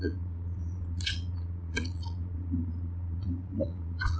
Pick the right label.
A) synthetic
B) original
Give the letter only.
A